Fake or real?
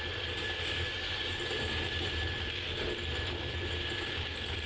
real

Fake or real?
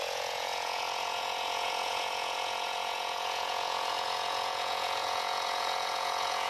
fake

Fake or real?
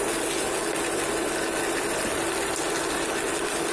real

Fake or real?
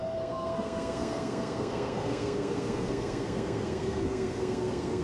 fake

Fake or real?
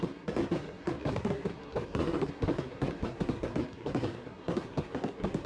fake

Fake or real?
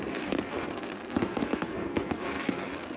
fake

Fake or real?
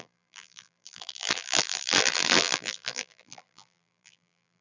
fake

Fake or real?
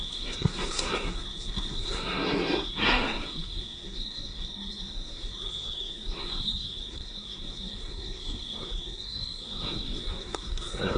fake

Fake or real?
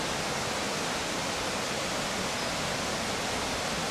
real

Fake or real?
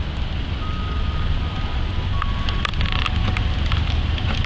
real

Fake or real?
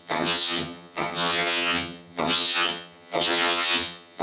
fake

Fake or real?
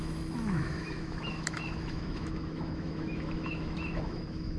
fake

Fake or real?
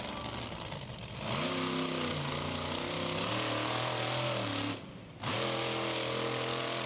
real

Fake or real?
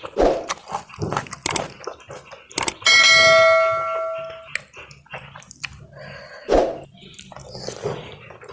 real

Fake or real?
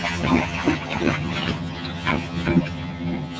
fake